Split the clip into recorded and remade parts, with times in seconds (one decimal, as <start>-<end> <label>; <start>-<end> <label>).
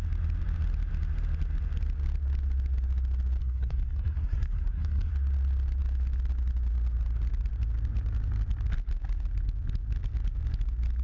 0.0-3.4 recorded; 3.4-5.1 remade; 5.1-11.0 recorded